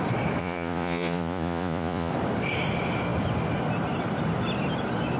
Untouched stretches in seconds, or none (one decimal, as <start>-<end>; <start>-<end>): 0.0-0.4; 2.1-5.2